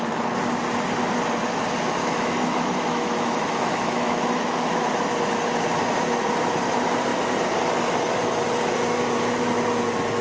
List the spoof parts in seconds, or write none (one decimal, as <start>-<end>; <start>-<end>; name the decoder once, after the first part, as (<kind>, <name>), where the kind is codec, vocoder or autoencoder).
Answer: 2.0-4.9 (autoencoder, DAC-VAE)